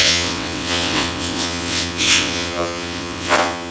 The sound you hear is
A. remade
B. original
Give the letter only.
A